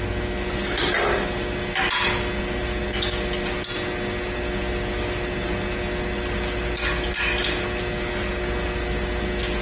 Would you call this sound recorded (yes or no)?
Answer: yes